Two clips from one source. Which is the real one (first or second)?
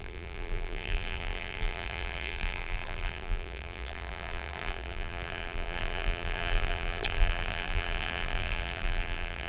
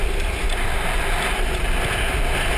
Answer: second